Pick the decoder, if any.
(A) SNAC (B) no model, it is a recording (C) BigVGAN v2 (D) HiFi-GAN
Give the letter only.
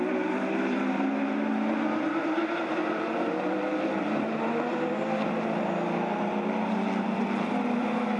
C